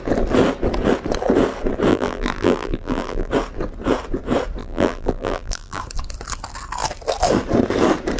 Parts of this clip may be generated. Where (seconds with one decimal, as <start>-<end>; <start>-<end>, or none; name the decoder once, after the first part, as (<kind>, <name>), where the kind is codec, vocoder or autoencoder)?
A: 1.9-3.3 (vocoder, BigVGAN v2); 4.6-5.8